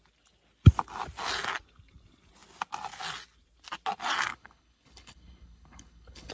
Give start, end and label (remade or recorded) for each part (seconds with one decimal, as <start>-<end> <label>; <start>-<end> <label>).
0.0-4.3 recorded; 4.3-6.3 remade